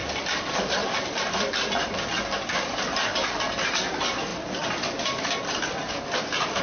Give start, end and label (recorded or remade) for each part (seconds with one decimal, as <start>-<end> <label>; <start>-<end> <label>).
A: 0.0-3.1 remade; 3.1-6.6 recorded